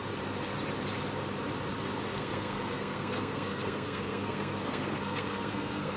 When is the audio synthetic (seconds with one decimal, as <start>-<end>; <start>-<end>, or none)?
2.1-6.0